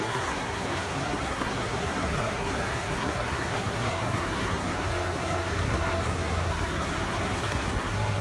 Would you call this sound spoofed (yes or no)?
yes